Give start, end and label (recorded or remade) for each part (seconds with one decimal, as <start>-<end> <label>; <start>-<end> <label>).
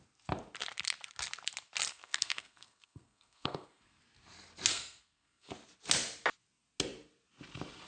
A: 0.0-1.9 recorded; 1.9-4.0 remade; 4.0-4.7 recorded; 4.7-5.5 remade; 5.5-7.9 recorded